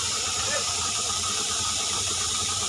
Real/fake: fake